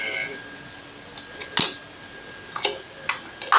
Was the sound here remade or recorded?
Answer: recorded